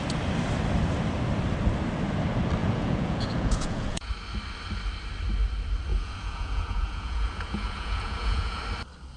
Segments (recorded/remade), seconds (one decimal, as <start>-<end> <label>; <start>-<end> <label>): 0.0-2.6 recorded; 2.6-4.1 remade; 4.1-5.9 recorded; 5.9-8.6 remade; 8.6-9.2 recorded